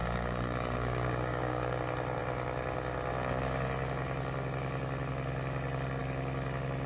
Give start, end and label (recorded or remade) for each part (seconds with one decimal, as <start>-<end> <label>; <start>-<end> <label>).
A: 0.0-1.8 remade; 1.8-6.9 recorded